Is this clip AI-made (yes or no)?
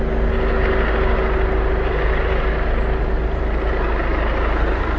no